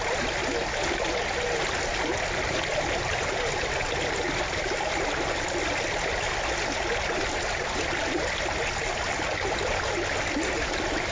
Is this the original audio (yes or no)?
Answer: yes